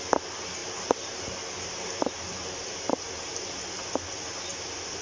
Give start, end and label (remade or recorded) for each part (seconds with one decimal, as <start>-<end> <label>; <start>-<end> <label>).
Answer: 0.0-0.6 recorded; 0.6-3.6 remade; 3.6-4.5 recorded; 4.5-5.0 remade